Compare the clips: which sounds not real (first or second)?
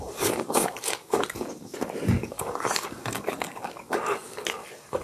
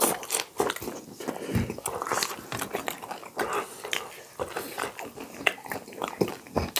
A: first